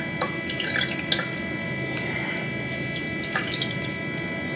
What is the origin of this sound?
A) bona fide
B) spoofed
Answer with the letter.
A